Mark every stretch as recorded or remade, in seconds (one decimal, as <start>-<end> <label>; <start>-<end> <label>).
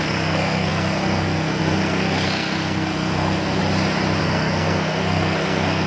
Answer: 0.0-3.6 remade; 3.6-4.2 recorded; 4.2-5.9 remade